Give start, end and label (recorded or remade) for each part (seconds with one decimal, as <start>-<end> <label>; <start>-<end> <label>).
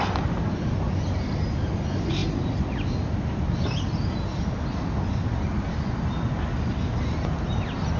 0.0-8.0 recorded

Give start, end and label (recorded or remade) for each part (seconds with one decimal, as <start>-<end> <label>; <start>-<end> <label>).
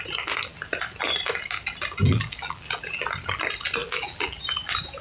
0.0-2.0 recorded; 2.0-3.0 remade; 3.0-3.8 recorded; 3.8-4.4 remade; 4.4-5.0 recorded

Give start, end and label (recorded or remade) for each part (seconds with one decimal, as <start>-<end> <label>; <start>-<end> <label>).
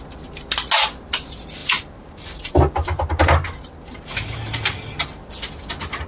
0.0-1.6 recorded; 1.6-5.3 remade; 5.3-6.1 recorded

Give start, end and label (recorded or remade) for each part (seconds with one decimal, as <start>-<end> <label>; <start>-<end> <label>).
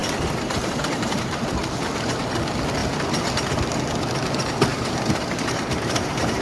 0.0-1.5 remade; 1.5-4.7 recorded; 4.7-6.4 remade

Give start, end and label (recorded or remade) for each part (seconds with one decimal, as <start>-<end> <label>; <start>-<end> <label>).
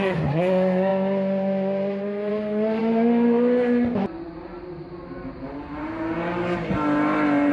0.0-7.5 recorded